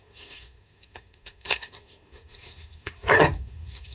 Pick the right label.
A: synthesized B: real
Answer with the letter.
A